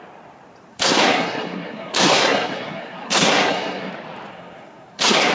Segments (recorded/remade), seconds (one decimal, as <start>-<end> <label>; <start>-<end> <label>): 0.0-0.7 recorded; 0.7-3.9 remade; 3.9-4.3 recorded; 4.3-5.3 remade